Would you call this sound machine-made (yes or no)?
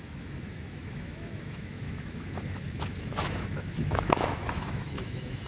yes